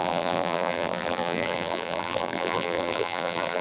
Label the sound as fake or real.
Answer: fake